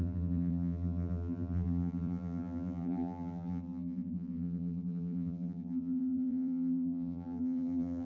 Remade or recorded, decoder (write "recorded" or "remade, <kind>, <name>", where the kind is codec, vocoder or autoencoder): remade, vocoder, BigVGAN v2